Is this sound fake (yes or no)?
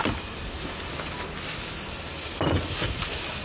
no